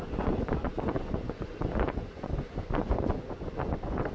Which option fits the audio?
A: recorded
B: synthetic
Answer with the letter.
B